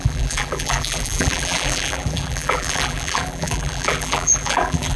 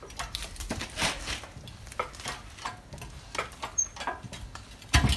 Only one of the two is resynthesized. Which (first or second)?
first